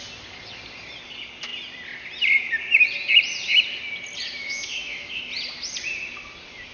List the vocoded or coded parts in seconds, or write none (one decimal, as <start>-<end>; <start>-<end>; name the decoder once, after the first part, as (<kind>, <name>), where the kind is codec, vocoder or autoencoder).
4.4-5.2 (autoencoder, DAC-VAE)